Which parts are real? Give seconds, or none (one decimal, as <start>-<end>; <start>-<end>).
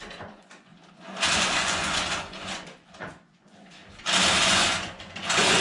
0.7-1.3; 3.8-4.4